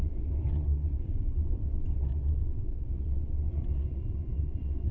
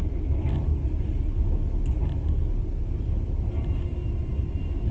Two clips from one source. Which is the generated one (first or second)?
first